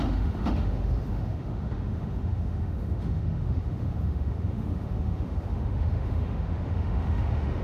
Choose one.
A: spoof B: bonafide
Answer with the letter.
A